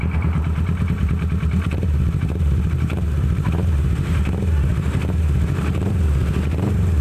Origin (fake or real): fake